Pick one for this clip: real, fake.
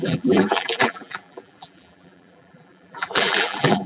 fake